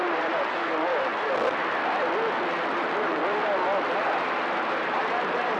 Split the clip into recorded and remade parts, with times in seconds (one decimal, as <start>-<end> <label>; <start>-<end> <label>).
0.0-1.1 remade; 1.1-2.7 recorded; 2.7-3.2 remade; 3.2-4.9 recorded; 4.9-5.6 remade